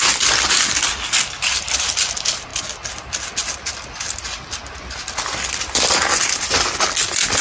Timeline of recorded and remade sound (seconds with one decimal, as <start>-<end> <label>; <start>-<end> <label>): 0.0-7.4 recorded